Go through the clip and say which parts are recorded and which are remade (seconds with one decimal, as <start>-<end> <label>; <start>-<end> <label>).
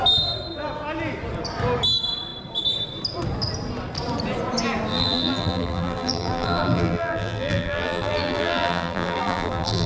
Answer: 0.0-4.9 recorded; 4.9-9.9 remade